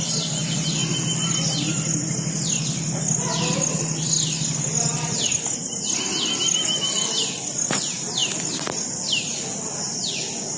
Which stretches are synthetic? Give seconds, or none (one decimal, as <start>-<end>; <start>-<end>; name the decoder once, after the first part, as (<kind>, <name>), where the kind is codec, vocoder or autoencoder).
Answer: none